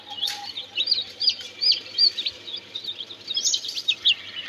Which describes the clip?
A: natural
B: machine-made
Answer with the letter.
B